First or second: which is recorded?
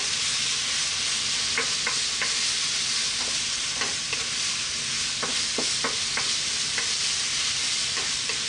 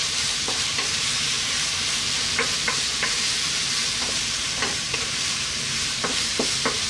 first